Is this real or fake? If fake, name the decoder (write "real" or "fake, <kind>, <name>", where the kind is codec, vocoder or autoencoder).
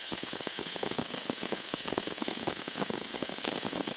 fake, codec, SNAC